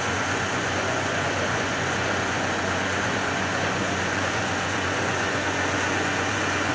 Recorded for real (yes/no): no